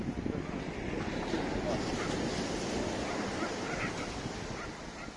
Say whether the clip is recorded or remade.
recorded